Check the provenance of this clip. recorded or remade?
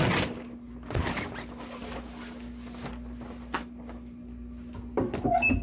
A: recorded